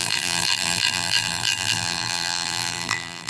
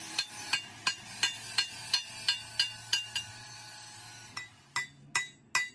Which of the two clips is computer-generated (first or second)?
first